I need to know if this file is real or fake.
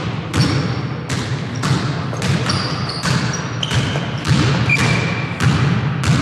real